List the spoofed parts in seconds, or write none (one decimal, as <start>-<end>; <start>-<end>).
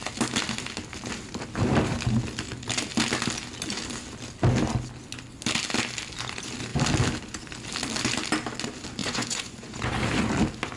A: 9.0-9.9